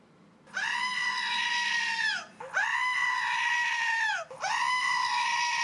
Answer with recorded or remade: recorded